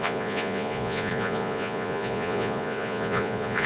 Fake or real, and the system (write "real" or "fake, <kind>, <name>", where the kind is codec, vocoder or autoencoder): fake, vocoder, Vocos